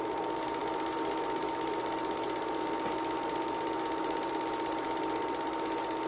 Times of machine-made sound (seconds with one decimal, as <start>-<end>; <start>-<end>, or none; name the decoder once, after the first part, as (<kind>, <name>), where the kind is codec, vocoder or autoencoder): none